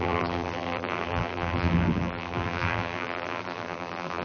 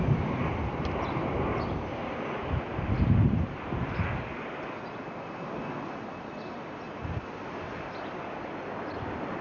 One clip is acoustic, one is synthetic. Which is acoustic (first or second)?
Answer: second